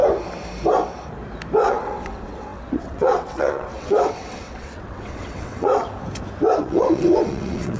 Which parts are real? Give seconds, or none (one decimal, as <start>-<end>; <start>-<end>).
0.0-1.7; 5.8-6.6